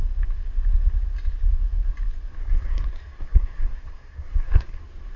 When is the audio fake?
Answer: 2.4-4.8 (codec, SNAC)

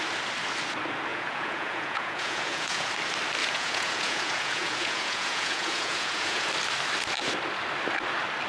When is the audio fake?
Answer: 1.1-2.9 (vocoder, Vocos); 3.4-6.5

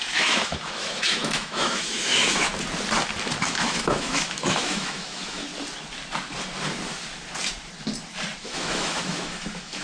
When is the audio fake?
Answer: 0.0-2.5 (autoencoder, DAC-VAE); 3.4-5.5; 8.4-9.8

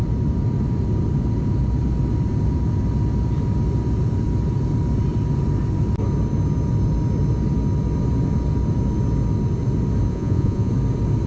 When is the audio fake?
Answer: 10.1-10.7 (vocoder, Vocos)

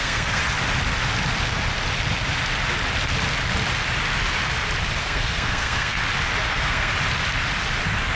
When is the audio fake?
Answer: 0.0-0.4 (codec, SNAC); 5.0-6.0; 6.5-6.9